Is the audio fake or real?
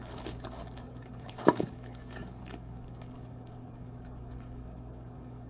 fake